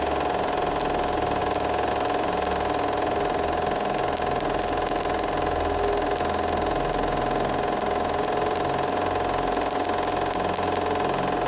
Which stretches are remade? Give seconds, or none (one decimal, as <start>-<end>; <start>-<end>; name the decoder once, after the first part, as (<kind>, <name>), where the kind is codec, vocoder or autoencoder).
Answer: none